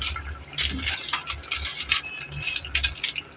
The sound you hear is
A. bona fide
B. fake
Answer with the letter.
A